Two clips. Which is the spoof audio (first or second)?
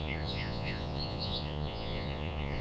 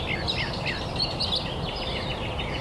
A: first